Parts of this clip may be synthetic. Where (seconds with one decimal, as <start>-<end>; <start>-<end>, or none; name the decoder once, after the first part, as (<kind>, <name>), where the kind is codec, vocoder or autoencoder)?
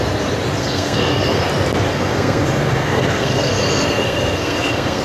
0.6-1.4 (codec, SNAC); 1.9-5.0